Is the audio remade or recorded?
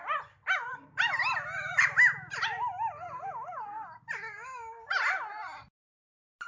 recorded